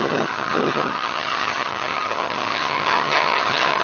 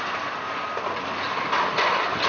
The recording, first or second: second